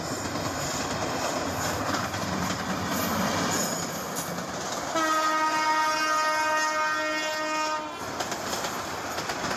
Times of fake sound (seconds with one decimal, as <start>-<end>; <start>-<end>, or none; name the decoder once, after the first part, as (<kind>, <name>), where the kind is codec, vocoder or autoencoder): 1.0-2.8 (vocoder, BigVGAN v2)